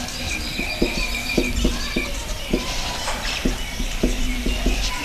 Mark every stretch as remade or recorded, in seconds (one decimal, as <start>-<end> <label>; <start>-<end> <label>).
0.0-2.2 recorded; 2.2-4.5 remade; 4.5-5.0 recorded